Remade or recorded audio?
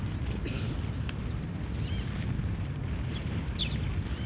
recorded